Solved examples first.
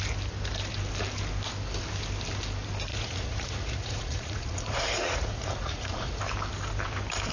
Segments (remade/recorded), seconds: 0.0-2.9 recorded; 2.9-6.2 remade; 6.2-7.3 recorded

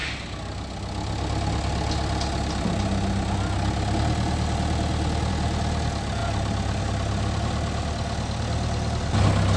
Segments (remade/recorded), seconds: 0.0-9.6 recorded